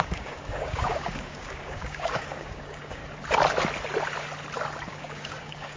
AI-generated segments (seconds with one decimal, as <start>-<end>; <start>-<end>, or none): 0.0-3.0; 4.9-5.8